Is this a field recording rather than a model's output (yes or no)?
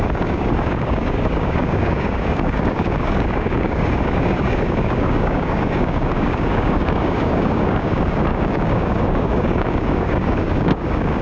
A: no